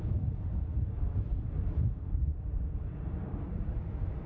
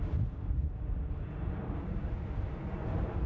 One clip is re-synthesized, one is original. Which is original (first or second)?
second